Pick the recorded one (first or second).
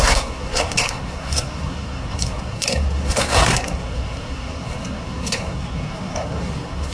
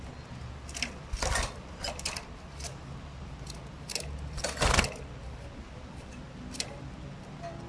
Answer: second